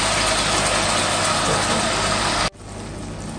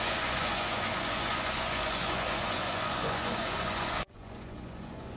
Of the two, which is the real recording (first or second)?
first